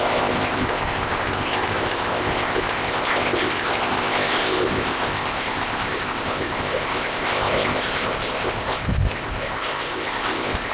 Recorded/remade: remade